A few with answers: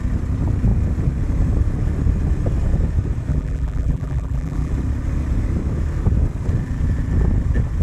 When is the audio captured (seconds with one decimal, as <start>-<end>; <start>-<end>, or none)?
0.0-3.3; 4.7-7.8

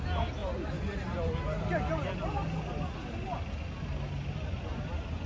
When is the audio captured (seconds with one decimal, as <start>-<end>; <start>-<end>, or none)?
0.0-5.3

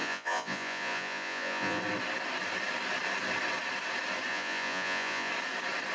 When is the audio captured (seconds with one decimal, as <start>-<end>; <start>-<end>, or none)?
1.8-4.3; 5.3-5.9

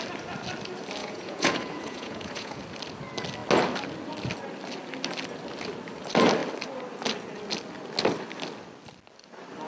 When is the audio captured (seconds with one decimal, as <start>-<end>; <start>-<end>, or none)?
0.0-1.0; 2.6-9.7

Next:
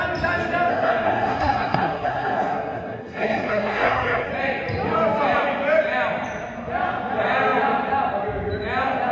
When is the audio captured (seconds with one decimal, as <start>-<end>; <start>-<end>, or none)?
0.0-0.7; 4.3-9.1

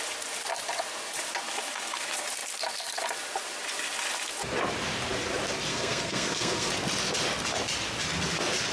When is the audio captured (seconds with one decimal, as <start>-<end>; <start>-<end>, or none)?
0.0-5.7; 6.7-8.7

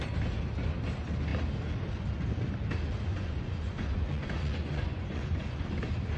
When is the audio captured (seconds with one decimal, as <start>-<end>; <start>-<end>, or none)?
0.0-3.1; 5.6-6.2

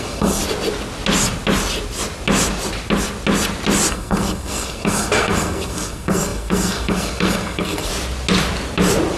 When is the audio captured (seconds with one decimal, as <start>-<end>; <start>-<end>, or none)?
0.4-3.9; 7.9-9.2